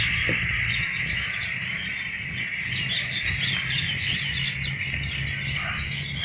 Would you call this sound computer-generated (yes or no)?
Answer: no